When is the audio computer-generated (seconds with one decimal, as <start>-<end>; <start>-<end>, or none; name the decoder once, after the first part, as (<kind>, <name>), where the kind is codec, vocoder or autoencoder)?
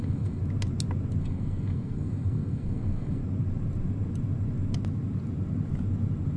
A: 0.0-0.4 (codec, SNAC); 1.2-3.2